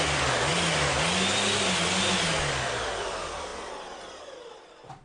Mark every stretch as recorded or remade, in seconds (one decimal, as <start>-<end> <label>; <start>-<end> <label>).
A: 0.0-5.0 recorded